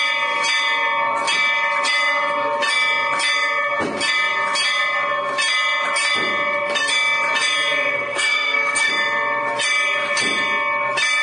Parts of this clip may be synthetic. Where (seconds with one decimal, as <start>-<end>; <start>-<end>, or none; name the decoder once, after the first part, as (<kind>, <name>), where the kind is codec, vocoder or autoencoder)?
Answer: 7.9-8.9 (codec, SNAC)